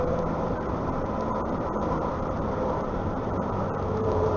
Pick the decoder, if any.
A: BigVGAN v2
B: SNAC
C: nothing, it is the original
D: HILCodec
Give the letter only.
A